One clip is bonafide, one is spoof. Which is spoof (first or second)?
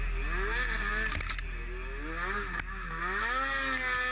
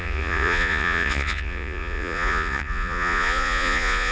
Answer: second